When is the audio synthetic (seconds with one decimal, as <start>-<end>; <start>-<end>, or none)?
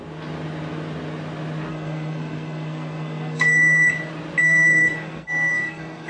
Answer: 1.7-3.9; 4.4-6.1